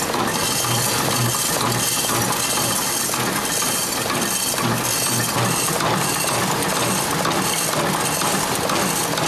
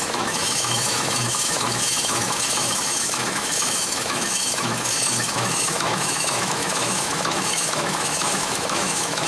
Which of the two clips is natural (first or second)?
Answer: first